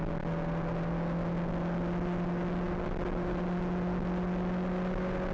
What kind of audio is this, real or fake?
real